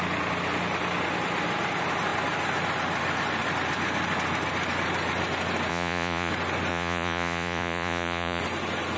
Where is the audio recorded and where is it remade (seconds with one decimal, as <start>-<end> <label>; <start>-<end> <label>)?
0.0-5.7 recorded; 5.7-6.3 remade; 6.3-6.7 recorded; 6.7-8.4 remade; 8.4-9.0 recorded